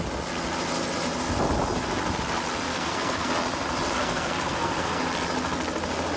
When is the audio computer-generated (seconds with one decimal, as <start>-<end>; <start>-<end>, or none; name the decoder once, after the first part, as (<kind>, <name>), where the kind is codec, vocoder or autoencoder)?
2.7-3.3 (codec, SNAC); 4.0-5.0